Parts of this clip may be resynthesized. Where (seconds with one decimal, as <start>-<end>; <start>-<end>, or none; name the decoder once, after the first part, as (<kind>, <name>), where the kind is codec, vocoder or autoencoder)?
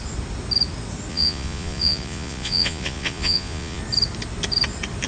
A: 1.1-3.8 (vocoder, Vocos)